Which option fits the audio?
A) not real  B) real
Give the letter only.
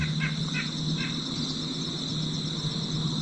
B